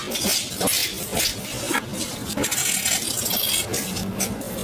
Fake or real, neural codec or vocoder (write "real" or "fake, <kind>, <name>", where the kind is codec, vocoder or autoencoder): real